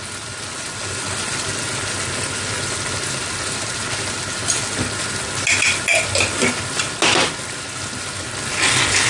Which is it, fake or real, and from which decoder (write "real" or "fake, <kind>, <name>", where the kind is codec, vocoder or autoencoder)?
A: real